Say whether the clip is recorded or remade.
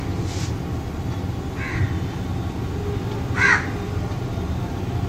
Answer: recorded